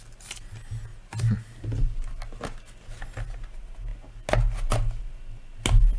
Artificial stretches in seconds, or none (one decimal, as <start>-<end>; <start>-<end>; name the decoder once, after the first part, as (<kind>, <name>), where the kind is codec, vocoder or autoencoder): none